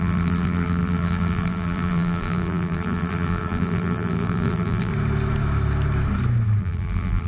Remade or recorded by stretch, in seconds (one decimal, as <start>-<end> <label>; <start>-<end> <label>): 0.0-4.9 remade; 4.9-6.6 recorded; 6.6-7.3 remade